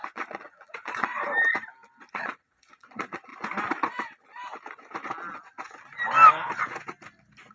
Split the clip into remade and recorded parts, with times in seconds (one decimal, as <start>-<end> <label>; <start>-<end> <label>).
0.0-1.1 remade; 1.1-2.1 recorded; 2.1-3.3 remade; 3.3-7.5 recorded